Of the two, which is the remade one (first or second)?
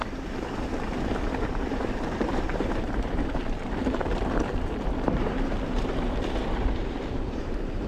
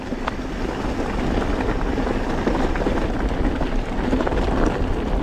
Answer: first